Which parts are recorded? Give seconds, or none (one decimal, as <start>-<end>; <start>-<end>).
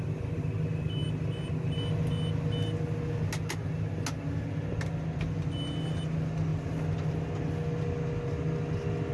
0.0-9.1